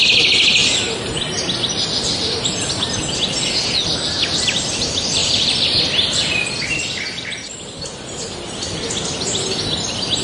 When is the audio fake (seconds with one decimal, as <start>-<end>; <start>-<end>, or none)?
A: none